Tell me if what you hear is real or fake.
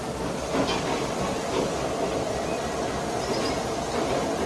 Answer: real